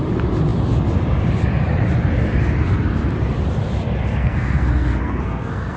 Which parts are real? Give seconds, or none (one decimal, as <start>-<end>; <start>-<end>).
0.0-4.1